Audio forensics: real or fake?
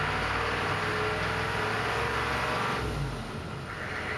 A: real